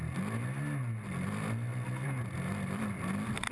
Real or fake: real